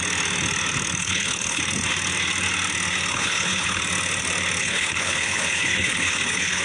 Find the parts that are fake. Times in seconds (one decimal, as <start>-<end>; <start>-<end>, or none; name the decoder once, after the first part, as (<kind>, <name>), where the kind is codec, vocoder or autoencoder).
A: 1.0-1.6 (codec, HILCodec); 3.1-3.8; 4.6-6.6

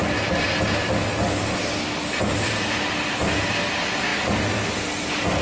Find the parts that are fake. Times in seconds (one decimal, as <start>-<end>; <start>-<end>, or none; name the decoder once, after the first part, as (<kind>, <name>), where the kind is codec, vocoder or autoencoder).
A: none

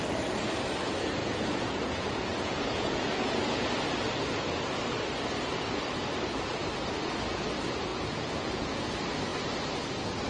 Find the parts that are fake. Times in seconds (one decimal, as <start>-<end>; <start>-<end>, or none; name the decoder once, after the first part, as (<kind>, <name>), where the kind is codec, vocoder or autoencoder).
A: 1.2-3.6 (vocoder, Vocos); 7.9-8.9

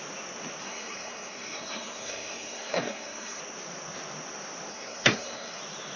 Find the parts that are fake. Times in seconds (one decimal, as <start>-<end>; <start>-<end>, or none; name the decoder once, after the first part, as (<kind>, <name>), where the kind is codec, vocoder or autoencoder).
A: 0.6-3.4 (codec, SNAC); 4.7-5.6

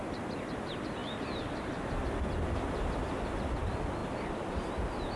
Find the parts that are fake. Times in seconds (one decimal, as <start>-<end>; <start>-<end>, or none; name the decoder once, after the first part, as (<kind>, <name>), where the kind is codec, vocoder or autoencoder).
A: 1.0-3.6 (vocoder, BigVGAN v2)

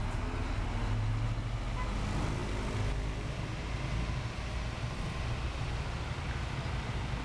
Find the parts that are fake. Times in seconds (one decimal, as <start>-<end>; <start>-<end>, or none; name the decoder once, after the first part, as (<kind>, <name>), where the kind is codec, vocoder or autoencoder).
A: none

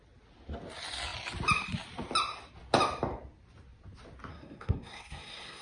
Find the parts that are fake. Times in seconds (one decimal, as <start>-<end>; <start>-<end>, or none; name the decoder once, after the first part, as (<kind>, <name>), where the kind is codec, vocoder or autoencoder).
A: 4.3-5.6 (codec, SNAC)

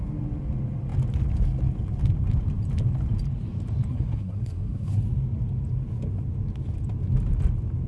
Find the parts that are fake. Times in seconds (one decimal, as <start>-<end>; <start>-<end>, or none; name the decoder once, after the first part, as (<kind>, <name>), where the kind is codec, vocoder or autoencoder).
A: 3.9-5.0 (codec, SNAC)